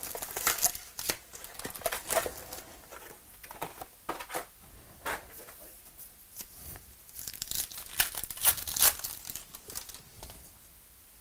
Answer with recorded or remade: recorded